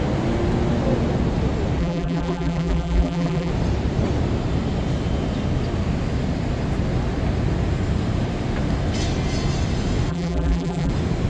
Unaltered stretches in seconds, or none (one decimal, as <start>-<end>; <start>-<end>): 0.0-1.8; 3.5-10.1; 10.9-11.3